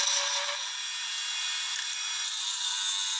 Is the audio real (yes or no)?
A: yes